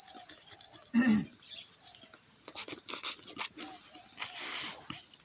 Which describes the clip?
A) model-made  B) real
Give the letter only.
B